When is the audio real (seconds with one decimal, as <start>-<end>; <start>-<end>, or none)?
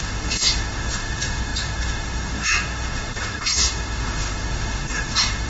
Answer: none